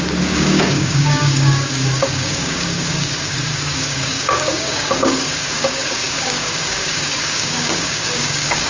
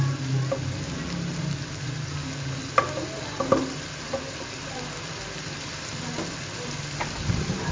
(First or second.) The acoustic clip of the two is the second